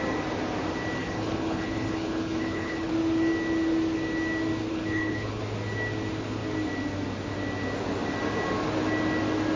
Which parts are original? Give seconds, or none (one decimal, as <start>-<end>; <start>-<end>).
0.0-1.0; 2.9-4.7; 5.4-9.6